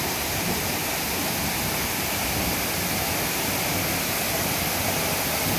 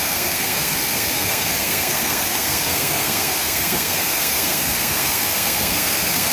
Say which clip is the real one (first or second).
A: first